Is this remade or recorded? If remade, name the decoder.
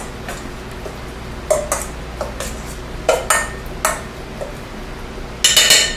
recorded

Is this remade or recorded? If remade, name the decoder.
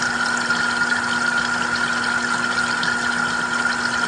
recorded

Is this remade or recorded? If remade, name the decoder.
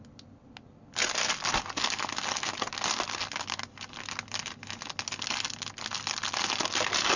recorded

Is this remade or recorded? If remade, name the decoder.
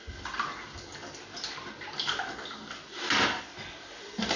recorded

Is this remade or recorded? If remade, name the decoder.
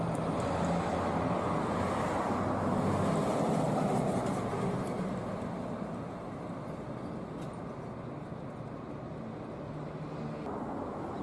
recorded